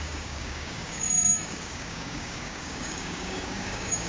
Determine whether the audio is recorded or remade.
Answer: remade